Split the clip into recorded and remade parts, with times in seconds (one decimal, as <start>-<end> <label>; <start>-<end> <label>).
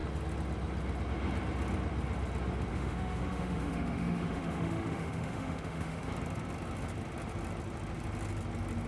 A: 0.0-2.7 recorded; 2.7-6.1 remade; 6.1-8.9 recorded